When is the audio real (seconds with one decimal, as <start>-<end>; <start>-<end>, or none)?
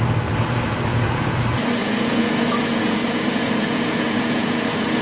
0.0-0.9; 1.4-1.8